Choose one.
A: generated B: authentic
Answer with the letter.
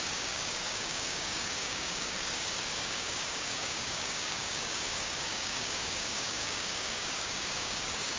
A